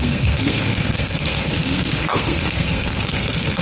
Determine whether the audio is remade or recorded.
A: remade